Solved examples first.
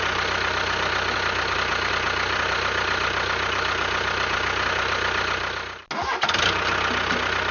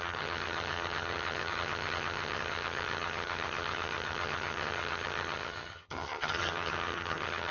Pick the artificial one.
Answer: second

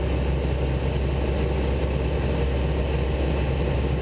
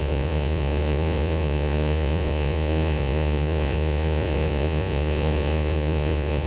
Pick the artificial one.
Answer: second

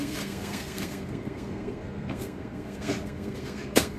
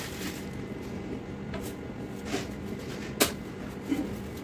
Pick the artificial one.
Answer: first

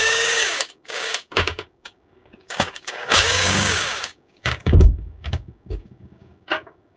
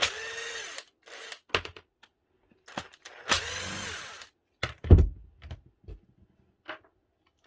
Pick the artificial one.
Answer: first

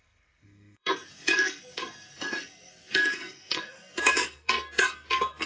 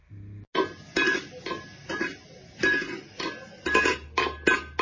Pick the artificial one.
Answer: first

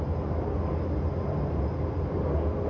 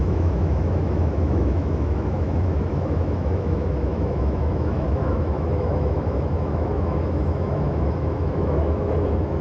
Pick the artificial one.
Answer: second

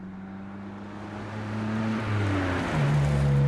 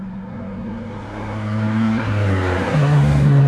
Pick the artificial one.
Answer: second